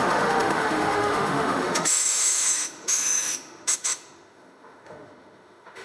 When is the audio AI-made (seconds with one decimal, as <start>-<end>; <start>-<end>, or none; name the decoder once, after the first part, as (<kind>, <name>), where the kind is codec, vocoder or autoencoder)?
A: 0.0-5.8 (autoencoder, DAC-VAE)